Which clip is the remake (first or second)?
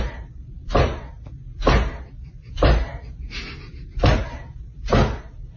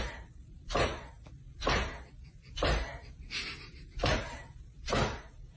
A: second